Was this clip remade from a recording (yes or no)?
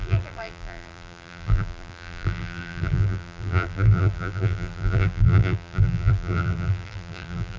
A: yes